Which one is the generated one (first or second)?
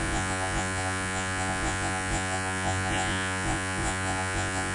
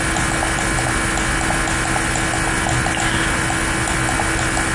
first